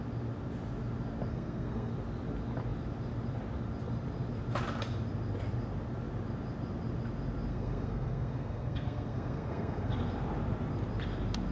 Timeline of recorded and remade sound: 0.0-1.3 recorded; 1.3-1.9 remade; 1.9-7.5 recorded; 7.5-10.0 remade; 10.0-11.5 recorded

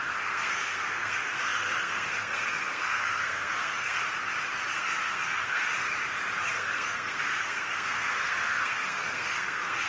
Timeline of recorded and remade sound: 0.0-4.0 remade; 4.0-4.7 recorded; 4.7-5.7 remade; 5.7-6.5 recorded; 6.5-9.9 remade